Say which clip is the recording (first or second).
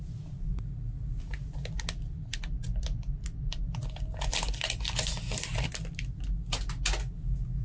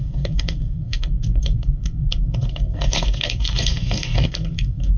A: first